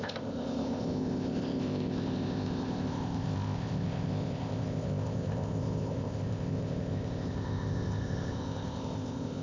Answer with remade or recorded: remade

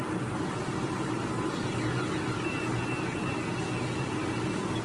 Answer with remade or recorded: recorded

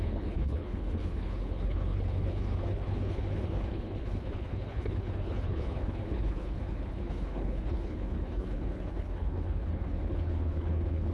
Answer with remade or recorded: remade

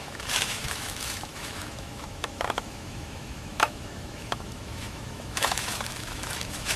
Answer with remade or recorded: remade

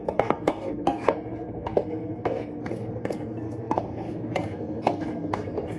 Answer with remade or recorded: remade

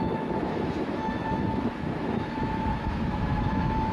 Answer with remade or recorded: remade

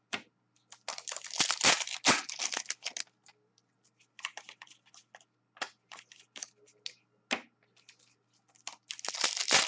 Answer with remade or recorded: recorded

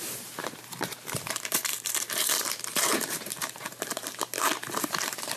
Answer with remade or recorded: remade